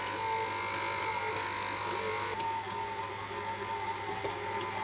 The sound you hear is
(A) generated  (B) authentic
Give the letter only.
B